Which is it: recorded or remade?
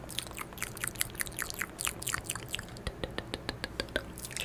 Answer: recorded